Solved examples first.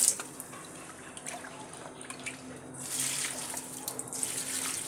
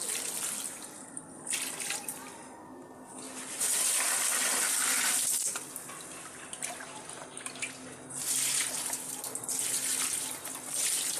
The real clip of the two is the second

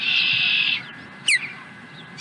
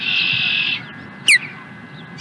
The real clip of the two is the second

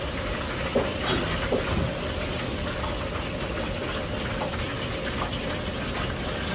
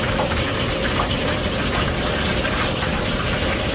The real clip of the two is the first